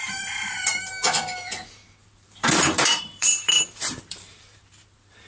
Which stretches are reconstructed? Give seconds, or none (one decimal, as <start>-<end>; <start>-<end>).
0.0-0.9; 2.0-4.6